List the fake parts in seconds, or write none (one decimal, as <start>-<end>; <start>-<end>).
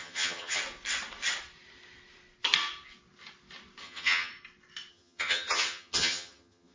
0.0-0.6; 3.8-4.3; 4.9-6.7